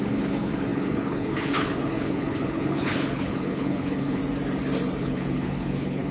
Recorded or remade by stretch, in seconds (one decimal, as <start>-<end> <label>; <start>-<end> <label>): 0.0-4.2 remade; 4.2-5.0 recorded; 5.0-6.1 remade